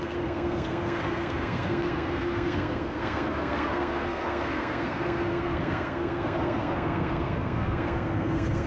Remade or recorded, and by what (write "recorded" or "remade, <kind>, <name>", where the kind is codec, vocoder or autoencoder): remade, codec, SNAC